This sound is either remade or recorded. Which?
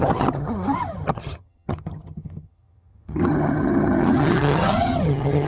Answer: remade